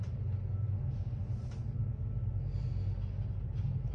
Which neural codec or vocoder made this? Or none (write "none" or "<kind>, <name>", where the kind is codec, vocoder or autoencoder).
none